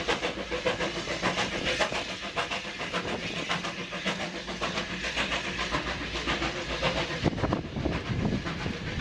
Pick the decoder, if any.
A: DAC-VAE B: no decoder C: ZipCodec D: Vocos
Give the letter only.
B